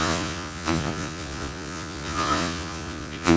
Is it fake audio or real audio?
fake